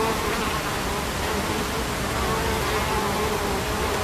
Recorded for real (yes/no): yes